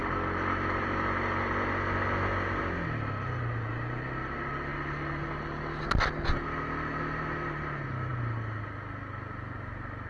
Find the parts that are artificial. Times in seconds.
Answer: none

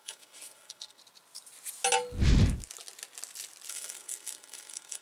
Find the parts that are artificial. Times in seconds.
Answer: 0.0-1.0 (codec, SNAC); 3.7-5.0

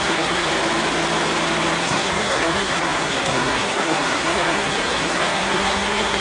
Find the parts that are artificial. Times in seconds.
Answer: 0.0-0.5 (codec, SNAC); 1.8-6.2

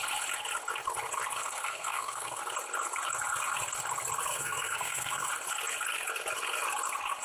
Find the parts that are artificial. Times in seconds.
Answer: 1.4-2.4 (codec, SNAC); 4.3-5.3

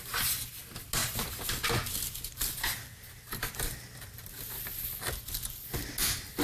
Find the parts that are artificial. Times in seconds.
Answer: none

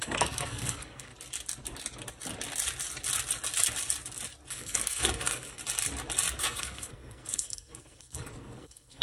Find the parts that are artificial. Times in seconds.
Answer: 0.0-1.1 (codec, SNAC); 4.5-5.6; 6.4-9.0